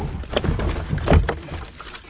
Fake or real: real